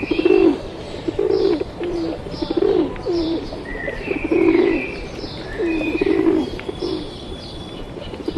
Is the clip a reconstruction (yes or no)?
yes